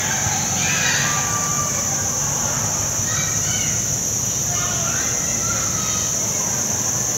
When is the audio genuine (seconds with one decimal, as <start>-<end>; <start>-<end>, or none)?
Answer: 0.0-1.5; 3.9-7.2